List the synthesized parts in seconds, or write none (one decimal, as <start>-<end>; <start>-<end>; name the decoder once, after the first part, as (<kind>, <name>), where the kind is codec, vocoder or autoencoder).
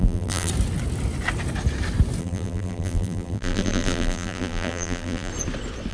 0.0-0.5 (vocoder, BigVGAN v2); 2.2-5.3